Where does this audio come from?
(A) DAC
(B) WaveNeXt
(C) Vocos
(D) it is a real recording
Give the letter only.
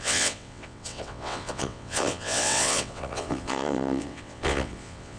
B